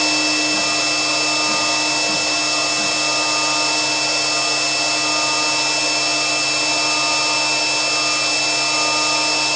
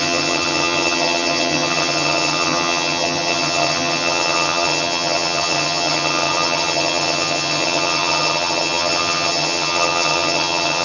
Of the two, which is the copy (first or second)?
second